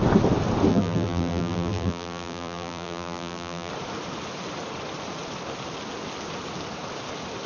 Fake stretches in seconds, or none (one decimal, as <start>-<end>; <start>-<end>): 0.7-3.7